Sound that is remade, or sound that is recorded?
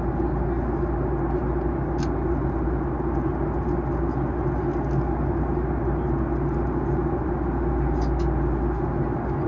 recorded